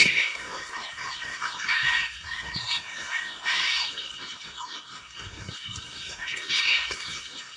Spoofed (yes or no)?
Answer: yes